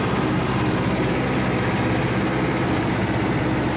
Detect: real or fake real